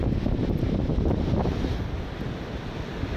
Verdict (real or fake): real